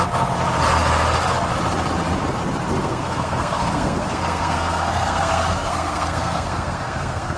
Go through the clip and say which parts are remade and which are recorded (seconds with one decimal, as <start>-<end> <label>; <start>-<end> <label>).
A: 0.0-2.8 recorded; 2.8-7.4 remade